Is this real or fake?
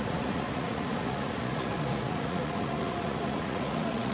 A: fake